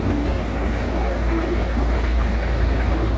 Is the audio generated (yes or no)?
yes